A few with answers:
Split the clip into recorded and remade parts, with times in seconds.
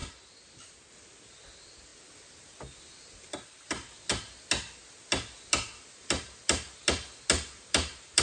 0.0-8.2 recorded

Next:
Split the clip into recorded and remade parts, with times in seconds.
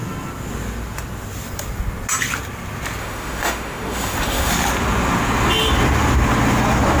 0.0-3.0 recorded; 3.0-4.5 remade; 4.5-7.0 recorded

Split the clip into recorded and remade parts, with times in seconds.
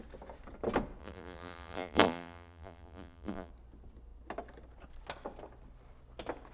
0.0-1.0 recorded; 1.0-3.5 remade; 3.5-6.5 recorded